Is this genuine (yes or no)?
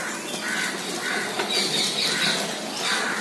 yes